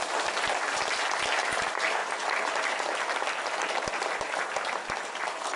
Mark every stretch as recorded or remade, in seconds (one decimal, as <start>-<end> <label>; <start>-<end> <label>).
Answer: 0.0-2.0 recorded; 2.0-5.6 remade